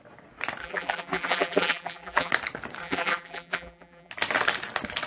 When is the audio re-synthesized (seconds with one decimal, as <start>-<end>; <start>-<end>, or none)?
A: 0.6-2.3; 2.8-4.1